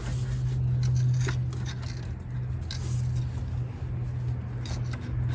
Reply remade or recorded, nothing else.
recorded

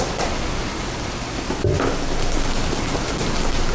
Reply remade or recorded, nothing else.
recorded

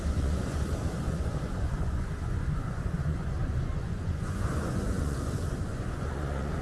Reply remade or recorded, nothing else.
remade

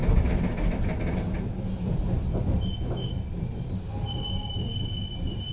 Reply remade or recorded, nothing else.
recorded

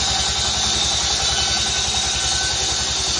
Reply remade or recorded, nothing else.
recorded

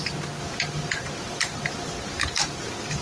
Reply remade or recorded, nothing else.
recorded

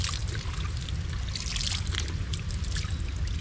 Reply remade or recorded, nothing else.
recorded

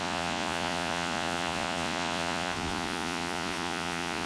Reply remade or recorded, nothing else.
remade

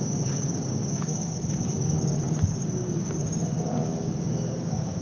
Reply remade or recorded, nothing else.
remade